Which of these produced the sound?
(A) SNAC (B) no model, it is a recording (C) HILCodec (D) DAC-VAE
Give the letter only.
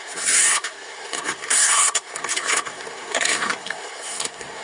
A